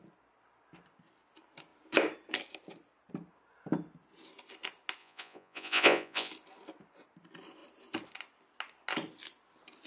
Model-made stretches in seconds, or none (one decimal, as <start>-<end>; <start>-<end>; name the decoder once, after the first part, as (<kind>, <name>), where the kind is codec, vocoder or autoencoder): 5.0-6.3 (vocoder, Vocos)